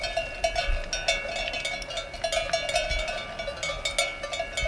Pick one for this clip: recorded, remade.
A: recorded